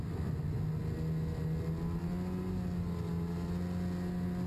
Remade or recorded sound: recorded